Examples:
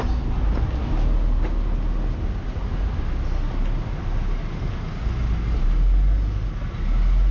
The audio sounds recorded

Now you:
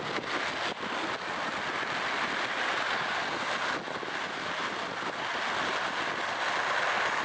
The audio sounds recorded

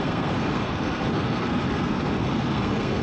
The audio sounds remade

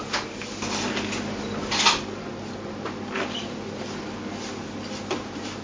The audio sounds recorded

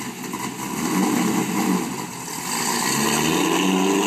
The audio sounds recorded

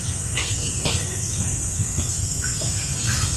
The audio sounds remade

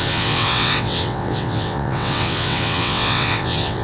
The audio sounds remade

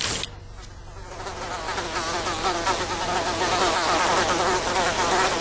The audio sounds recorded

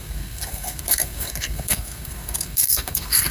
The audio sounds remade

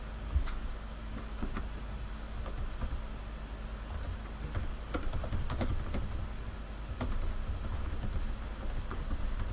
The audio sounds recorded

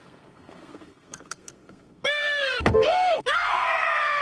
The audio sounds remade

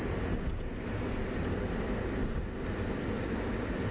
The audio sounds recorded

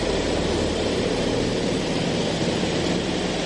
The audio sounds remade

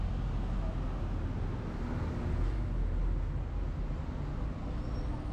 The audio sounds recorded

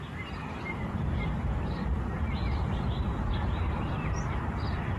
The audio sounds remade